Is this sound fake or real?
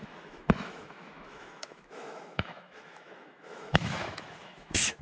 fake